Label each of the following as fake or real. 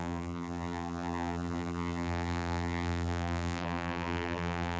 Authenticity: fake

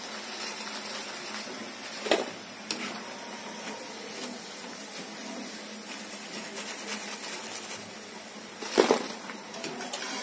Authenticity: real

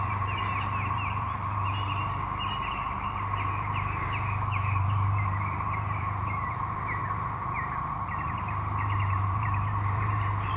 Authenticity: fake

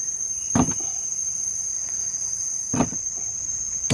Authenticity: fake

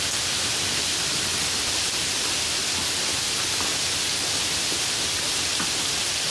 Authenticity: real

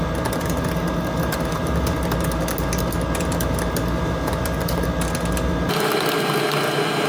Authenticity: real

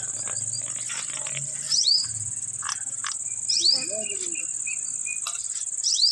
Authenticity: real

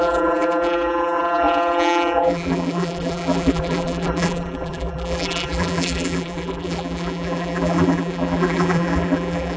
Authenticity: fake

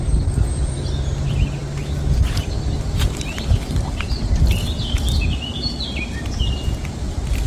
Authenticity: real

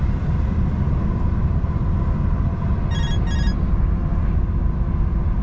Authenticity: real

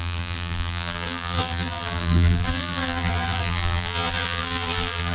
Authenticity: fake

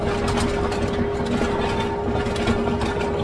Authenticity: real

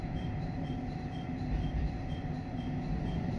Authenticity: fake